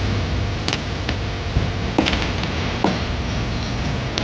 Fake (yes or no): no